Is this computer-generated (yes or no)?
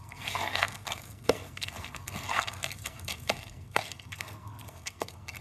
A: yes